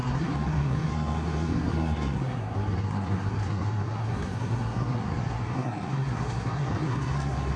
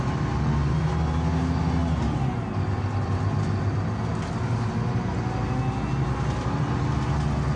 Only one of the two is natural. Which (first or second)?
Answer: second